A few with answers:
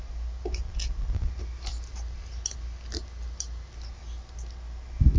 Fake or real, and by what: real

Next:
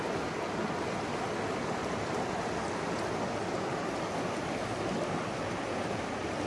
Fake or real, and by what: real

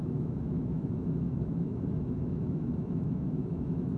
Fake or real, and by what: fake, autoencoder, DAC-VAE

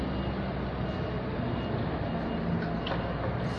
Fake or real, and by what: real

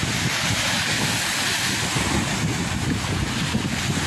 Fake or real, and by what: real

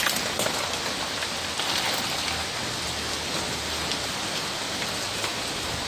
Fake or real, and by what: real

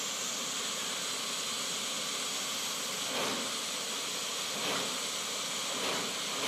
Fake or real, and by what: real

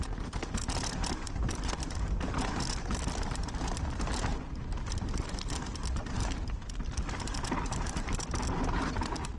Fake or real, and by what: real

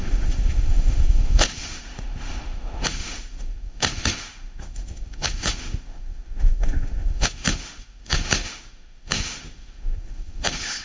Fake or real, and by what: fake, autoencoder, DAC-VAE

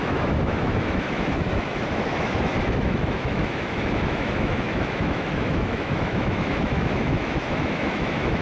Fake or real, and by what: fake, autoencoder, DAC-VAE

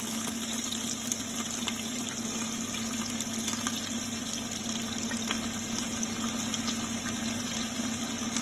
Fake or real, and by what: real